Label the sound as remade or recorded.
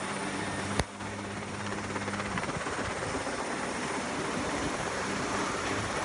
remade